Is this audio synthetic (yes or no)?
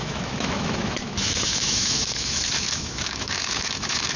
yes